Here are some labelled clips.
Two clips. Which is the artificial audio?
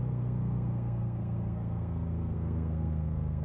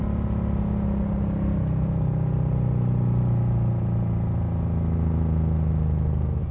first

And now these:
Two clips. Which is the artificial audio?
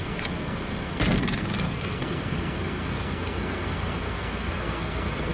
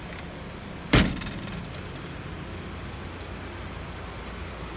first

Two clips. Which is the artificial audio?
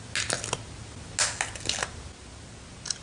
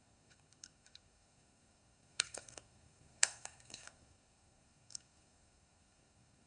second